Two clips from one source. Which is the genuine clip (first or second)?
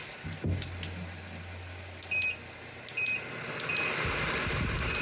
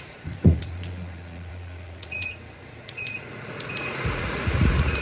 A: first